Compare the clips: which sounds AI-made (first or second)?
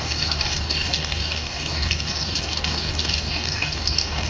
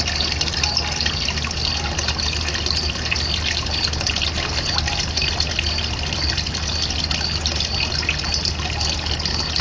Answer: first